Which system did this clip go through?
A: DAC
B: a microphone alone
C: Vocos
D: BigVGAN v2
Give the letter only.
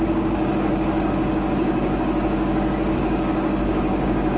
A